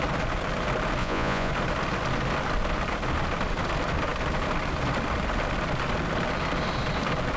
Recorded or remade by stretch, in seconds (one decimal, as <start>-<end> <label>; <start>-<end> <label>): 0.0-1.0 recorded; 1.0-1.5 remade; 1.5-7.4 recorded